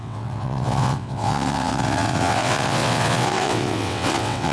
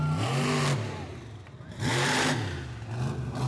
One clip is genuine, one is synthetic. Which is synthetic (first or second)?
first